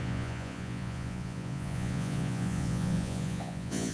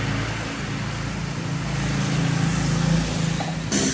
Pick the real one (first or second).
second